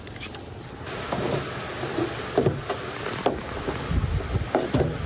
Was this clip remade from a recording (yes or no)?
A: no